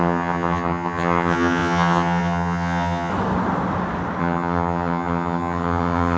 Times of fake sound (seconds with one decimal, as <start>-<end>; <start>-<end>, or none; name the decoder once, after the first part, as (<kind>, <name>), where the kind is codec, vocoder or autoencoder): 0.0-3.1 (vocoder, HiFi-GAN); 4.2-6.2